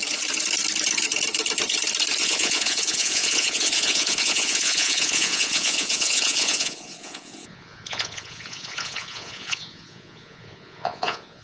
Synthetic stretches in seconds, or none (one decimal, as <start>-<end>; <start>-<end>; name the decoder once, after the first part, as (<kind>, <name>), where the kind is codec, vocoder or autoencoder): 2.2-11.4 (vocoder, Vocos)